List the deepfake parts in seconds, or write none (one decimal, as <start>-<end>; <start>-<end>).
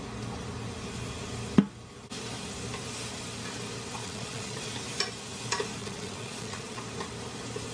4.0-4.7; 5.8-6.8